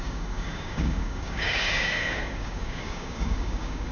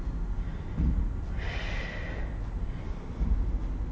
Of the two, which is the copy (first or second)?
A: first